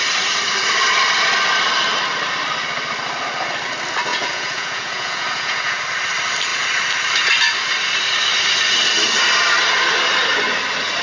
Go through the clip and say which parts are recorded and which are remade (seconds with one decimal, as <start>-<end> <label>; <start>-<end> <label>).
0.0-4.1 recorded; 4.1-5.8 remade; 5.8-11.0 recorded